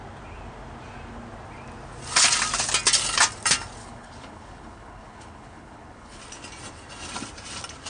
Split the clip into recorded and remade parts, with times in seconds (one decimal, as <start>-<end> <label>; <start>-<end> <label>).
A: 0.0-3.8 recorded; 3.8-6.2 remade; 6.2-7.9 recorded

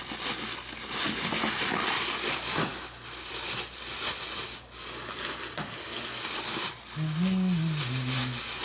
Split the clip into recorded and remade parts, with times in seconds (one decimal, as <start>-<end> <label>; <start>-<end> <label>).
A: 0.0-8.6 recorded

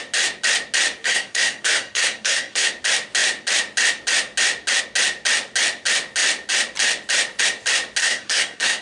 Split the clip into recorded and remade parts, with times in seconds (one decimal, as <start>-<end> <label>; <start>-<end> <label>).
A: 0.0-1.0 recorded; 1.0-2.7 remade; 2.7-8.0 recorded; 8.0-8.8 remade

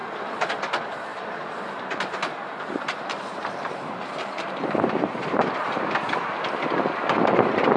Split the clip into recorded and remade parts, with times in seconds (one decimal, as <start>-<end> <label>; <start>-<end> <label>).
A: 0.0-1.1 recorded; 1.1-5.8 remade; 5.8-7.8 recorded

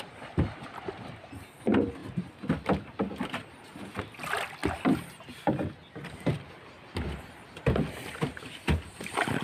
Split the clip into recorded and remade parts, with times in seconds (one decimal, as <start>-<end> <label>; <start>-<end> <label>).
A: 0.0-9.4 recorded